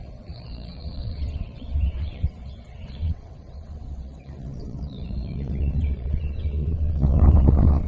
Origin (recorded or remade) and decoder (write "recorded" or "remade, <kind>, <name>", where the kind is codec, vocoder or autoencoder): remade, vocoder, WaveNeXt